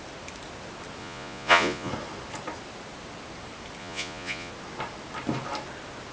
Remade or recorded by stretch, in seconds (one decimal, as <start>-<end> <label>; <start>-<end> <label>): 0.0-1.0 recorded; 1.0-1.9 remade; 1.9-3.8 recorded; 3.8-4.5 remade; 4.5-6.1 recorded